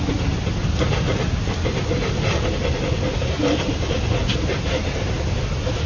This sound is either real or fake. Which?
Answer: real